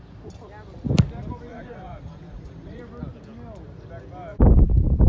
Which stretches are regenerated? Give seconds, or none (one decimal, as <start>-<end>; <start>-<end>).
1.5-2.8